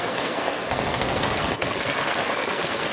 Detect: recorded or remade remade